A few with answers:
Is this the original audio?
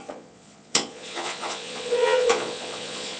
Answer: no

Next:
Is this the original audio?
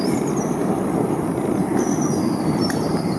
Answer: yes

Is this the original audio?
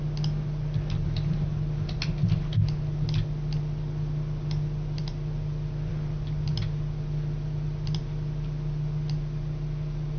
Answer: yes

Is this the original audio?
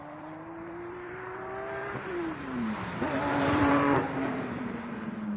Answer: no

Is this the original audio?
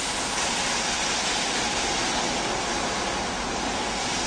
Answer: yes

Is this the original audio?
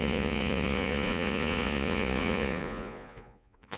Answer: no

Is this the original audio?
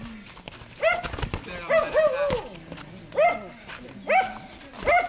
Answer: yes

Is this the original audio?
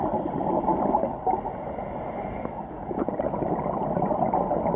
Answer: yes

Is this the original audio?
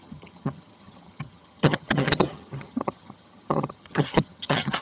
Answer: no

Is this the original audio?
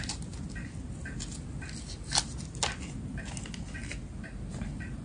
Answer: yes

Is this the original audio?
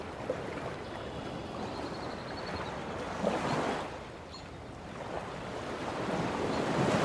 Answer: yes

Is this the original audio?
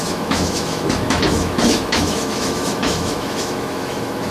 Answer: no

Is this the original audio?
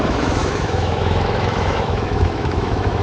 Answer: no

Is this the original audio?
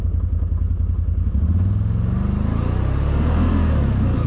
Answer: yes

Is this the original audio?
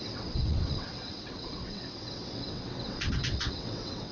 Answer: no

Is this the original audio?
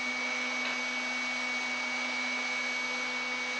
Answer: yes